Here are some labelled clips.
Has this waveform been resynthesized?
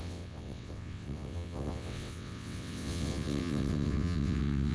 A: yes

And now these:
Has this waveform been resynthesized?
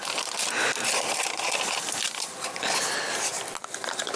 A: no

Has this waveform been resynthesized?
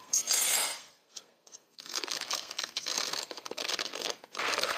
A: yes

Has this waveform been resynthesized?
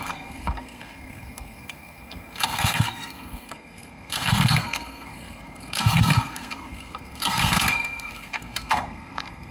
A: yes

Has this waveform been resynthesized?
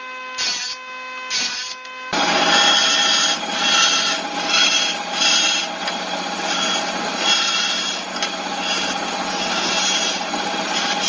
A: no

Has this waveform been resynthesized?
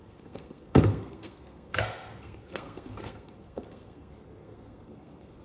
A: yes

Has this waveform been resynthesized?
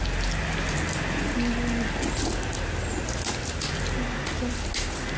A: no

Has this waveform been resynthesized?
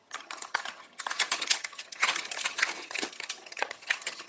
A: yes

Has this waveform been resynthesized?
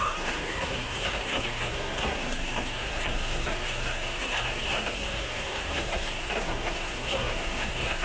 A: yes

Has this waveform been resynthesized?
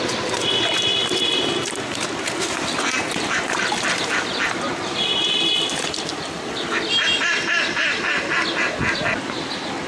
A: no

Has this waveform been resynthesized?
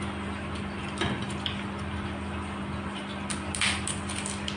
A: no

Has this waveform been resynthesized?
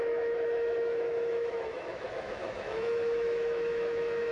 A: yes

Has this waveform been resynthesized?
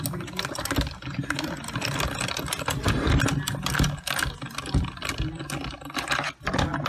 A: no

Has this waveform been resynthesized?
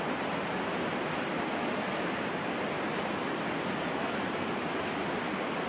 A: no